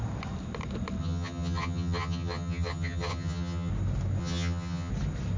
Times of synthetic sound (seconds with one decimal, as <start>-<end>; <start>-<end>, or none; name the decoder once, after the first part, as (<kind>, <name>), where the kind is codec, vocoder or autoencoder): 1.0-3.7 (vocoder, HiFi-GAN); 4.2-4.9